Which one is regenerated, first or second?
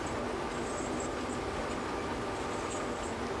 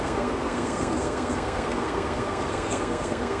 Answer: second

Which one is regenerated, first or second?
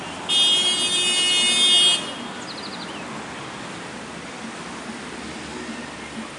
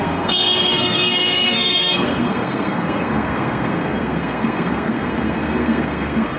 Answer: second